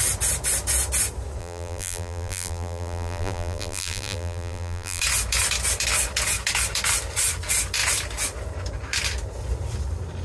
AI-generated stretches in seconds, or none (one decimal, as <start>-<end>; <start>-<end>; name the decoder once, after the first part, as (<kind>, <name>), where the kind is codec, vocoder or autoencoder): 1.4-5.0 (vocoder, BigVGAN v2)